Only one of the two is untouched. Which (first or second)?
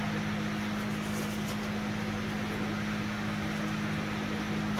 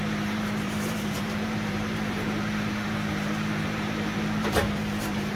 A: first